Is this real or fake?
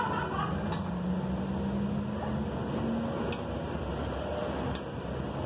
real